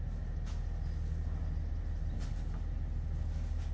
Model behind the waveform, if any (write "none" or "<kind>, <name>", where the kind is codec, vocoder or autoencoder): none